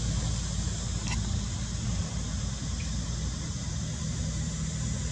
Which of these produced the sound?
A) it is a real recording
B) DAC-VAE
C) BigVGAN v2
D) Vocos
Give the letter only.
A